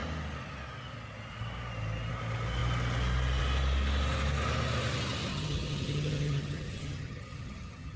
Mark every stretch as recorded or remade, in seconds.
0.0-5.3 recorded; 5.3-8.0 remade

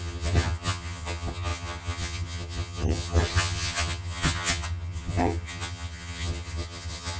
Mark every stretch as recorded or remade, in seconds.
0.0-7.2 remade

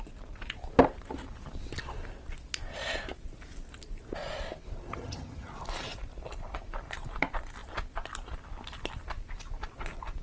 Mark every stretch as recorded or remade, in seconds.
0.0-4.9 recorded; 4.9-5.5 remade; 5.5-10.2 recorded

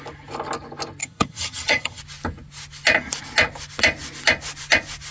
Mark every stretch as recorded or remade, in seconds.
0.0-1.0 recorded; 1.0-2.0 remade; 2.0-5.1 recorded

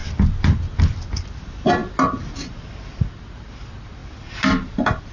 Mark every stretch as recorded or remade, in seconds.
0.0-5.1 recorded